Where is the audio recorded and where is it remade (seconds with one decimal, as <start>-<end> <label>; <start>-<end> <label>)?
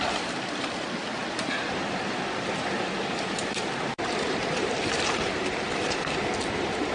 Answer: 0.0-1.2 recorded; 1.2-5.3 remade; 5.3-6.9 recorded